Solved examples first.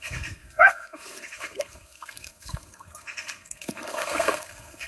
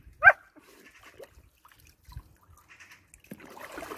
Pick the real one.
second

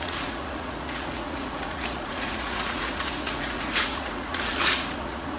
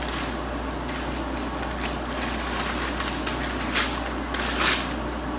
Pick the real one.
second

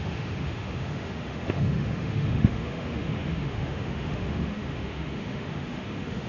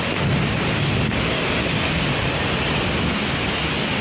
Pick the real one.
second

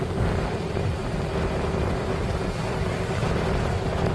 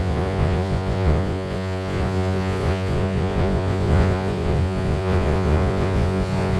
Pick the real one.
first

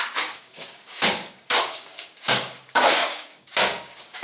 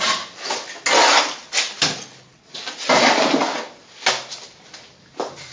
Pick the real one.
second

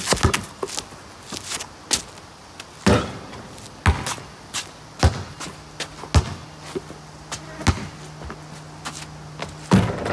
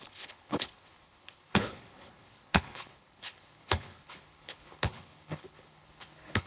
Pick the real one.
first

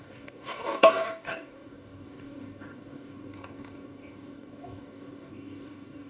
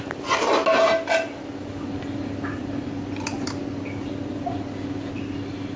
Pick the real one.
second